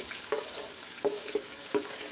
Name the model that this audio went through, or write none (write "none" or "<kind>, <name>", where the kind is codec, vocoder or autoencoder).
codec, DAC